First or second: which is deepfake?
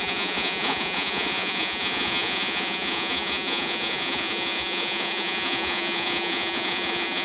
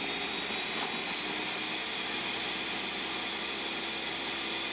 first